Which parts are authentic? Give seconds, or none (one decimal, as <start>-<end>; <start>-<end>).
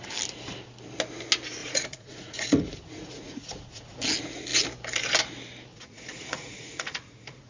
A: 0.0-1.6; 4.0-5.7